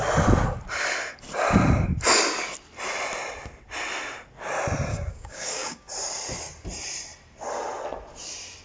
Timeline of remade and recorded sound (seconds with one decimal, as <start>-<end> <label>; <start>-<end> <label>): 0.0-4.9 recorded; 4.9-5.9 remade; 5.9-8.6 recorded